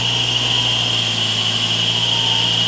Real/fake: real